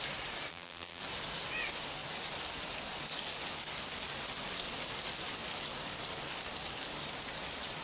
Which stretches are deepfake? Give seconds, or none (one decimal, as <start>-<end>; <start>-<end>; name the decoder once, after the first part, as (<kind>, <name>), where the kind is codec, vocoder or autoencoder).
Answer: 0.5-1.0 (vocoder, BigVGAN v2)